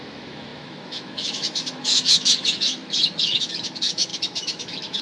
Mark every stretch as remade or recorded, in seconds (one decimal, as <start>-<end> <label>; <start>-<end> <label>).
0.0-5.0 remade